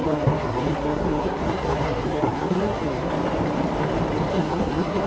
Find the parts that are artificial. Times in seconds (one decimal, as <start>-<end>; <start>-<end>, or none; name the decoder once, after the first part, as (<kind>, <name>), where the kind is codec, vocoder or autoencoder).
0.0-3.1 (codec, SNAC); 4.3-5.1